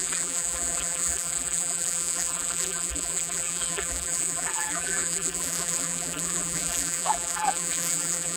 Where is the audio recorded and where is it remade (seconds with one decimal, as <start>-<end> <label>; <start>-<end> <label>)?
0.0-8.4 remade